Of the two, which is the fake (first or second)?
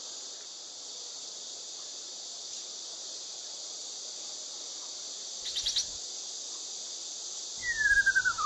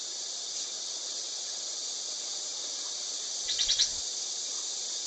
second